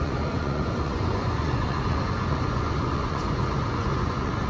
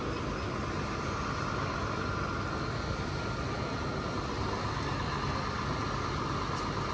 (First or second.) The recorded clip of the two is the second